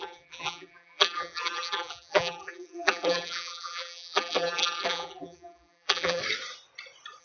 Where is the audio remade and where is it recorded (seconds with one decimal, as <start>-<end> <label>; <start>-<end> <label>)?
0.0-6.2 remade; 6.2-7.2 recorded